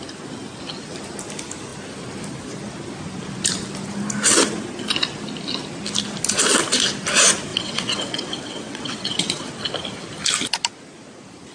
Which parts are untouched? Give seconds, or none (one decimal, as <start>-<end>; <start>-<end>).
0.0-7.5; 9.5-11.5